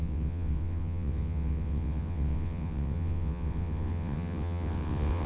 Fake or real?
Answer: fake